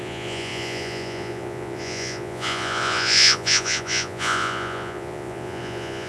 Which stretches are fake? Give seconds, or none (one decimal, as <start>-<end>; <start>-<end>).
0.0-6.1